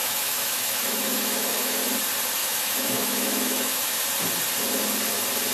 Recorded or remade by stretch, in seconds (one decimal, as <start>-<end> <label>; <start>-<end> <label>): 0.0-1.8 remade; 1.8-2.4 recorded; 2.4-4.0 remade; 4.0-5.5 recorded